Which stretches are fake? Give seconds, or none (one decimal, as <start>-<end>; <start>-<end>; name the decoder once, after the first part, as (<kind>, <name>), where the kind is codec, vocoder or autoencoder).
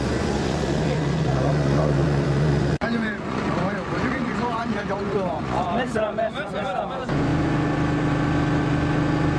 0.0-7.3 (vocoder, Vocos)